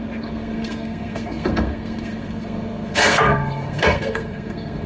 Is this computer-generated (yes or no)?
yes